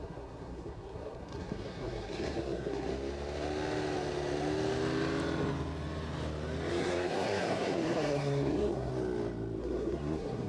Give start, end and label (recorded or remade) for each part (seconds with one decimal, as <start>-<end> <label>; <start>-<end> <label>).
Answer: 0.0-2.9 remade; 2.9-6.7 recorded; 6.7-8.9 remade; 8.9-9.6 recorded; 9.6-10.5 remade